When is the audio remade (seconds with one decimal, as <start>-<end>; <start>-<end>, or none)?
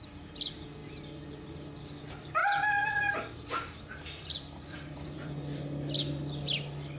2.4-5.3